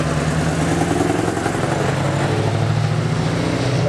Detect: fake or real real